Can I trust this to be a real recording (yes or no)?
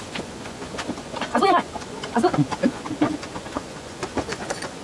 no